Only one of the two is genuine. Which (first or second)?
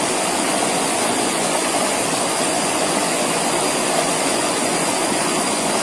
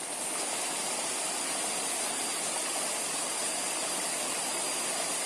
second